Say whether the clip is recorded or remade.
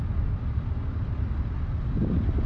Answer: recorded